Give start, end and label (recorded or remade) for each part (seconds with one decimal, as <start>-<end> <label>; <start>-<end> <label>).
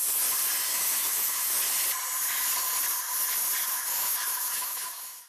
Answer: 0.0-0.7 recorded; 0.7-1.5 remade; 1.5-3.7 recorded; 3.7-5.3 remade